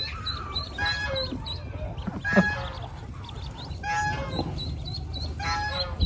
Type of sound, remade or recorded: recorded